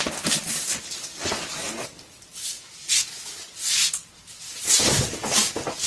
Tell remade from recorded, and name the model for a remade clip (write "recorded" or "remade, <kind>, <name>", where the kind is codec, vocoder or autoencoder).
recorded